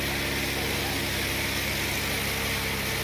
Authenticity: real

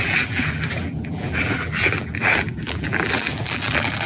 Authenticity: fake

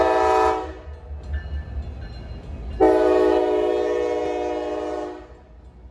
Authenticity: real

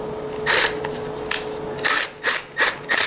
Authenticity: real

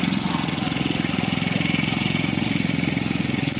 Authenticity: fake